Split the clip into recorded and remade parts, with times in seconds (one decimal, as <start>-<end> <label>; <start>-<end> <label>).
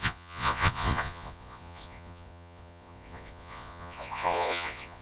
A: 0.0-5.0 remade